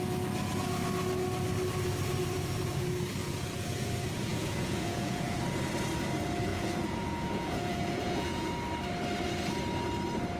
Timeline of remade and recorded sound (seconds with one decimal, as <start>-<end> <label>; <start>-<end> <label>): 0.0-3.2 recorded; 3.2-3.9 remade; 3.9-4.3 recorded; 4.3-5.4 remade; 5.4-6.5 recorded; 6.5-8.5 remade; 8.5-10.4 recorded